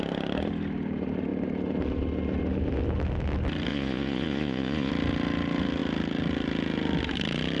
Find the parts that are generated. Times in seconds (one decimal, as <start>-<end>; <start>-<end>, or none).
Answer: 3.7-4.9